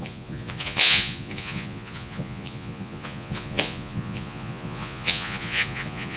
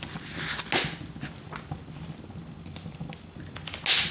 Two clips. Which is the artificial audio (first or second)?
first